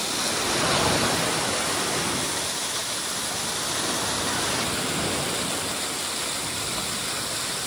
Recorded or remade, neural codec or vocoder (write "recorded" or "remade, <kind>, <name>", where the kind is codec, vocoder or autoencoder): recorded